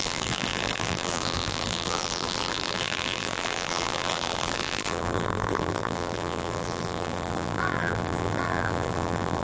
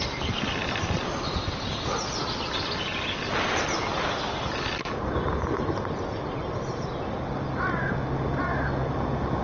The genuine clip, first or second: second